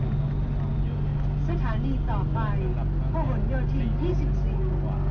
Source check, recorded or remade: recorded